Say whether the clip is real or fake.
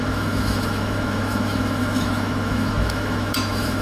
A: fake